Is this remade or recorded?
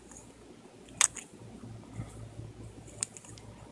recorded